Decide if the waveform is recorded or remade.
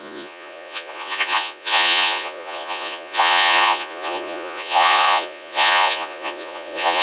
remade